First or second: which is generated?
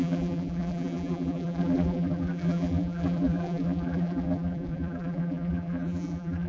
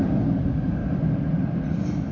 first